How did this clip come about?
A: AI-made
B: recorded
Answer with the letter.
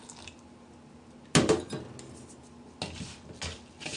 B